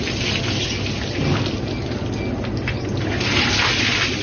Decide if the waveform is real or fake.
real